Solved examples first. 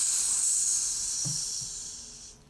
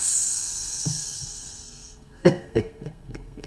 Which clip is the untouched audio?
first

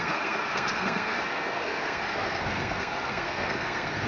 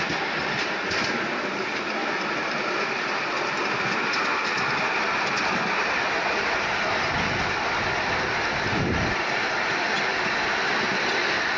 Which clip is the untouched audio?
second